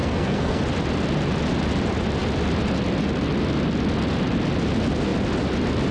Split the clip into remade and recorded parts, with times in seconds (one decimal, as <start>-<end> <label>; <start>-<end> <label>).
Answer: 0.0-0.6 remade; 0.6-5.9 recorded